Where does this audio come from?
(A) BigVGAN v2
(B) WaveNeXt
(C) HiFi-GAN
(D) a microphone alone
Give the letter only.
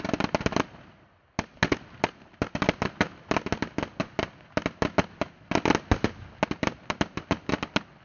D